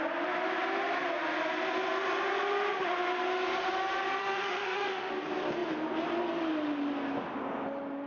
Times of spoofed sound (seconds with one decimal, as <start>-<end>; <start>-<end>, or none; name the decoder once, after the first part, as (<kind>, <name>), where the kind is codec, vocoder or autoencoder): 4.2-5.1 (autoencoder, DAC-VAE)